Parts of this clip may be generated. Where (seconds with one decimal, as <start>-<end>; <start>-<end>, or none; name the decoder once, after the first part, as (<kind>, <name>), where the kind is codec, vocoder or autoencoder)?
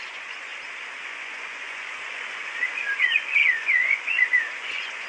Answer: 0.0-0.5 (vocoder, Vocos); 1.0-5.1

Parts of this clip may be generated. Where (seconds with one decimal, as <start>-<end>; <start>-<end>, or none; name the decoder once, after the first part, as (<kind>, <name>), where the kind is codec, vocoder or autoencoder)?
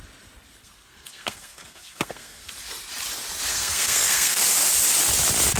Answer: 0.6-2.5 (codec, SNAC); 3.5-4.4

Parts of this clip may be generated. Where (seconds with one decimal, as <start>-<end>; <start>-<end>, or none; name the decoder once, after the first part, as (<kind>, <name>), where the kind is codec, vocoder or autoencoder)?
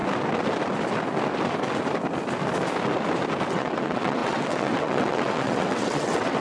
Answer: 3.5-6.4 (vocoder, WaveNeXt)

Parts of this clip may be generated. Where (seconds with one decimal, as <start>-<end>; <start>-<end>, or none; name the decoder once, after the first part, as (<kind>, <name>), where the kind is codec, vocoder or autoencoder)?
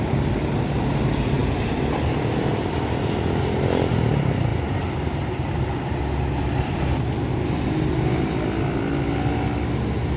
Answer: none